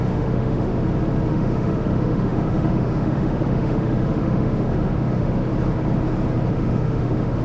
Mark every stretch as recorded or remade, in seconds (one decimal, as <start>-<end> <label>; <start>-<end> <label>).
0.0-0.7 remade; 0.7-1.3 recorded; 1.3-5.5 remade; 5.5-6.5 recorded; 6.5-7.4 remade